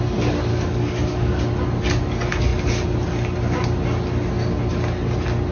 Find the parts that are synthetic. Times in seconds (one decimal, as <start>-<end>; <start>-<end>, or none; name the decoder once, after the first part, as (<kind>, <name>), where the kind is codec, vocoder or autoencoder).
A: 0.5-1.4 (codec, DAC)